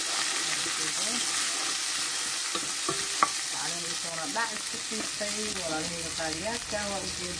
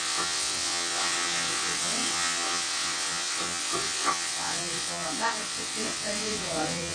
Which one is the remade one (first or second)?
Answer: second